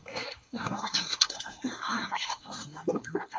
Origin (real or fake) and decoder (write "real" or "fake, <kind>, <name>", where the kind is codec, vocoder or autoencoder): fake, codec, SNAC